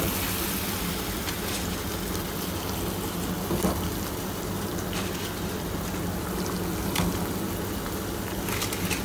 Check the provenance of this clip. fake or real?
real